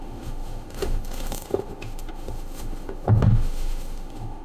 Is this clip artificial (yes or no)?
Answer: yes